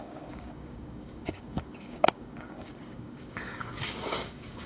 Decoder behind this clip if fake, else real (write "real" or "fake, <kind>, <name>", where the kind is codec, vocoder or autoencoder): fake, codec, DAC